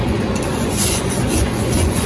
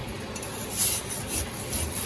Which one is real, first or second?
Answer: second